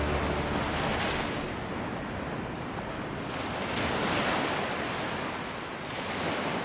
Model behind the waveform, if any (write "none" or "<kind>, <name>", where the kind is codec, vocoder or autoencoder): none